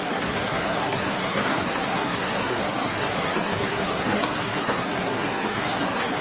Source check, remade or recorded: remade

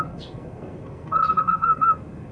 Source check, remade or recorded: remade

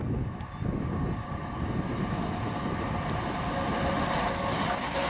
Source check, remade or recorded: recorded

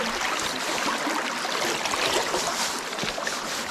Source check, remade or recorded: recorded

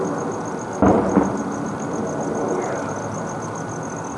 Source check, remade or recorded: recorded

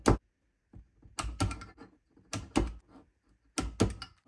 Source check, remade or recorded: recorded